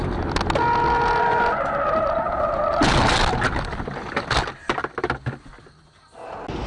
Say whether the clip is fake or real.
real